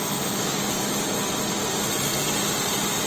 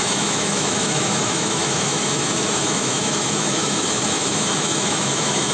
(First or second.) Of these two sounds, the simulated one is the second